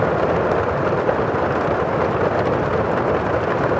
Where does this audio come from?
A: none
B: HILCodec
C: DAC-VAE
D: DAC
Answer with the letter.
A